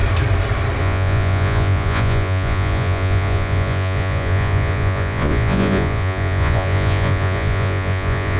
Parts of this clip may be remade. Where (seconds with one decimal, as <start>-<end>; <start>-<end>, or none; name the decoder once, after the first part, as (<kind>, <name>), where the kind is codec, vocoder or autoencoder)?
0.8-8.4 (vocoder, Vocos)